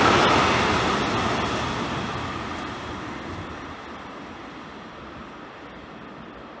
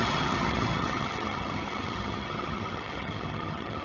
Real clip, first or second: first